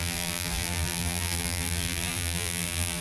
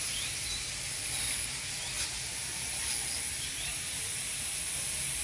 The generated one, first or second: first